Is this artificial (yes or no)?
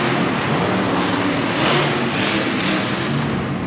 no